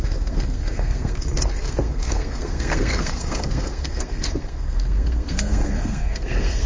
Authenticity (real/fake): fake